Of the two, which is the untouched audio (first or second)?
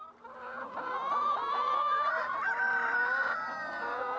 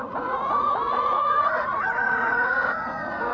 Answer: first